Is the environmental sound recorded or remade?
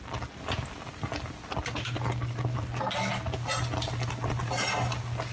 recorded